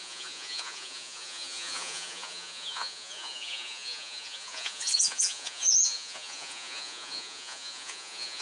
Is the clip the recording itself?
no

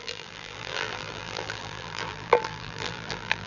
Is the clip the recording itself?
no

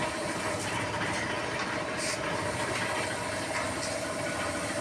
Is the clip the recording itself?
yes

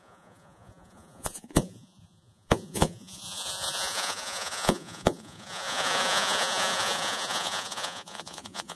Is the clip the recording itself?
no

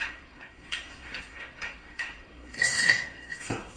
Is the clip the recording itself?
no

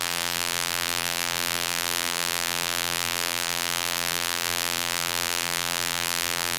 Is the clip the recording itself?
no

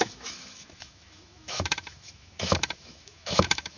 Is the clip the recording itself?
no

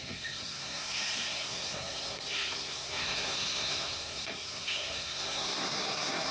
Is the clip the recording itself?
no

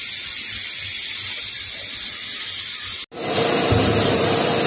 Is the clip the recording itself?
yes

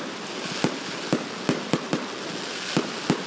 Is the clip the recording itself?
yes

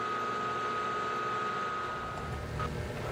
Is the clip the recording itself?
yes